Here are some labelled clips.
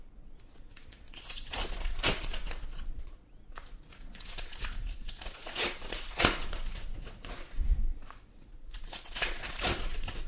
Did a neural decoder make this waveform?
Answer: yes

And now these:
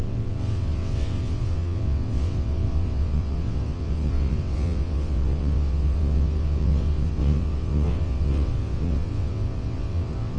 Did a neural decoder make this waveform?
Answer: yes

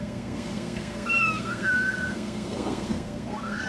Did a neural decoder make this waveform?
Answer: yes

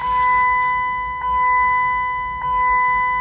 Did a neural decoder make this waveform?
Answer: no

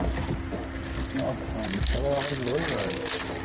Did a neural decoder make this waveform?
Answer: no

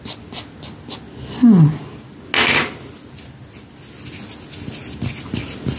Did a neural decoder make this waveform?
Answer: no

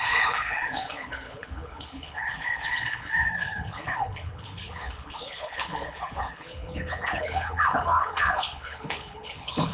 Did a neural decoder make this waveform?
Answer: yes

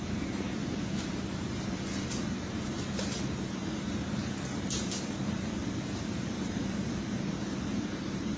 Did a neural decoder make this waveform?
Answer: yes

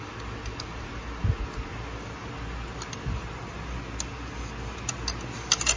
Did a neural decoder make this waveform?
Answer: no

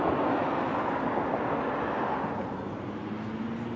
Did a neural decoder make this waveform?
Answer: no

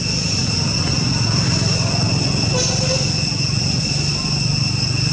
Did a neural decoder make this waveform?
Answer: no